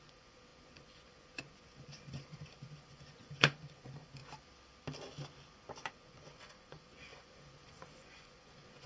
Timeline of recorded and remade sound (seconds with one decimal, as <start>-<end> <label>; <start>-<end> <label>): 0.0-4.2 remade; 4.2-5.9 recorded; 5.9-8.9 remade